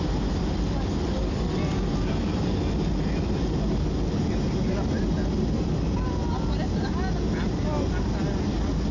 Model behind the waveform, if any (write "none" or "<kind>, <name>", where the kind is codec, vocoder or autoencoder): none